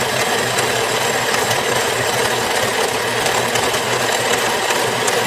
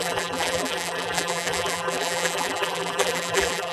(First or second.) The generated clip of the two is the second